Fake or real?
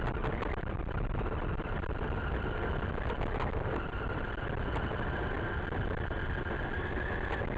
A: real